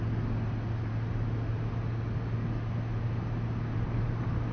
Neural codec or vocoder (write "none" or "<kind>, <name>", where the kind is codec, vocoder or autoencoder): none